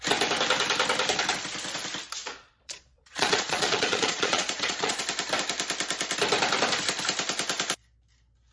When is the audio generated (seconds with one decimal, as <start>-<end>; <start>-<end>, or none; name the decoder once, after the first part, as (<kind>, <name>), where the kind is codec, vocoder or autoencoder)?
2.2-5.0 (vocoder, Vocos)